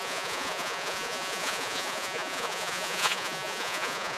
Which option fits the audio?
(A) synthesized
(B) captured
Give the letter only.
A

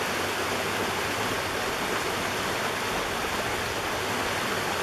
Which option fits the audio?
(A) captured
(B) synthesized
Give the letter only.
A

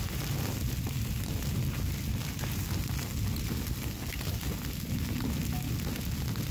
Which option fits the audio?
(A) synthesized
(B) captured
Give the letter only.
B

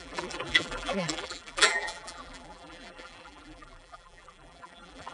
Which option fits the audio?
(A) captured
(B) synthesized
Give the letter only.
B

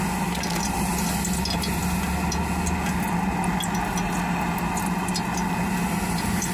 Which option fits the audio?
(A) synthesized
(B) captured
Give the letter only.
B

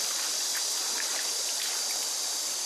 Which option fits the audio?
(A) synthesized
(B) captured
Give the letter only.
B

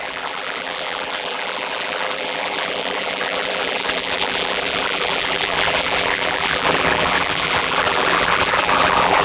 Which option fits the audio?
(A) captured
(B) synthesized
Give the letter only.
B